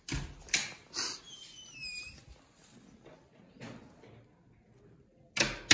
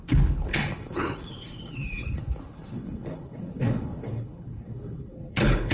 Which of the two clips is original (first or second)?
first